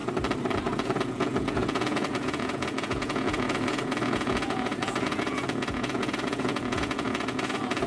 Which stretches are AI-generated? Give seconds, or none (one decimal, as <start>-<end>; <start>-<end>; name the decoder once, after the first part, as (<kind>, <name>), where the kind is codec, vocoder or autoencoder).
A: 0.6-7.9 (vocoder, Vocos)